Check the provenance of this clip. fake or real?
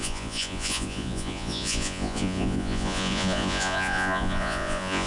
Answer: fake